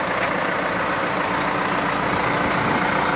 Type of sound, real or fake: real